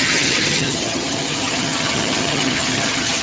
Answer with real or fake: fake